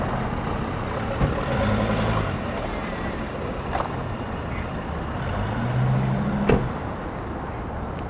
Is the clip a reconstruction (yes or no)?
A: no